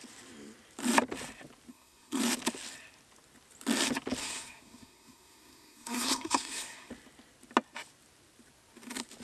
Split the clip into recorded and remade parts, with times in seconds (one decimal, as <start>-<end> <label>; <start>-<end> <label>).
0.0-1.7 recorded; 1.7-2.2 remade; 2.2-4.2 recorded; 4.2-6.9 remade; 6.9-9.2 recorded